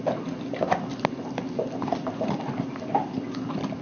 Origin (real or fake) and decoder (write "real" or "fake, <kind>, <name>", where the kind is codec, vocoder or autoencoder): real